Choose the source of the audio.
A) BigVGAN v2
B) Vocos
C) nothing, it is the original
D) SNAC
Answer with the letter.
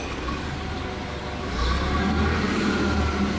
C